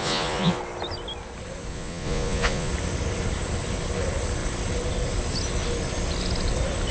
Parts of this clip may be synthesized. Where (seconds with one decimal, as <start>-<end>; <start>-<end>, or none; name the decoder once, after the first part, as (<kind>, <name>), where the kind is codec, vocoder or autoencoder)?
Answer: 0.0-0.6 (vocoder, Vocos); 1.7-2.7